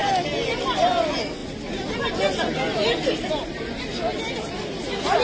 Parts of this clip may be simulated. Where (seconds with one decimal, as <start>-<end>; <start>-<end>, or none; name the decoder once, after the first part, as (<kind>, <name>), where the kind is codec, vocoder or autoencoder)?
none